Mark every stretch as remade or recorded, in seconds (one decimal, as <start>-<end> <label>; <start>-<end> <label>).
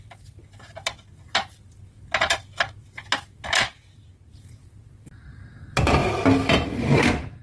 0.0-7.4 remade